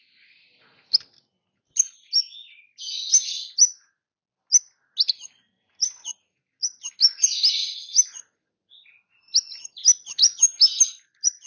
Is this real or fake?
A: real